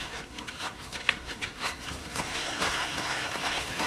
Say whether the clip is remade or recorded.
remade